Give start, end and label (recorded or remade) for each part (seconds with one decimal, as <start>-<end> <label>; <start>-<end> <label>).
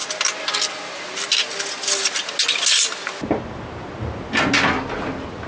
0.0-5.5 recorded